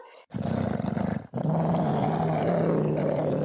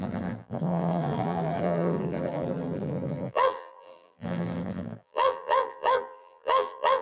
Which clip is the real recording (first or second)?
first